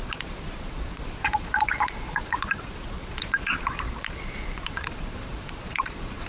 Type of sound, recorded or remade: remade